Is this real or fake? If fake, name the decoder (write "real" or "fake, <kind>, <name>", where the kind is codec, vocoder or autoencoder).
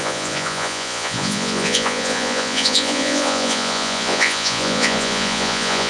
fake, vocoder, Vocos